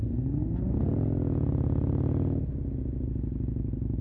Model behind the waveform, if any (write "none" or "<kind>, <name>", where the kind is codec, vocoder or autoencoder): none